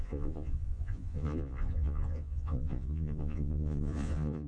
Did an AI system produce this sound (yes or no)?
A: yes